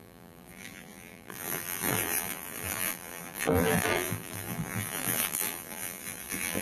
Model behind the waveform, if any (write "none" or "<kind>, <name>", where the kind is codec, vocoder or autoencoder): vocoder, BigVGAN v2